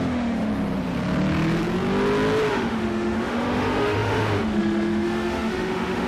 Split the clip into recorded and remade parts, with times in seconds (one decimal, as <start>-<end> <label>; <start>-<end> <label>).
0.0-0.5 remade; 0.5-2.5 recorded; 2.5-6.1 remade